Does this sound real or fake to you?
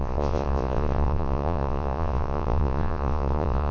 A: fake